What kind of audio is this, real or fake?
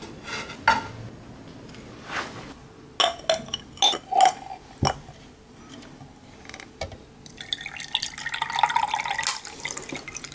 real